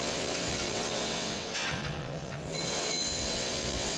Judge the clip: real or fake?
fake